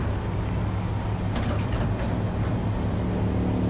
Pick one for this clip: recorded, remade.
recorded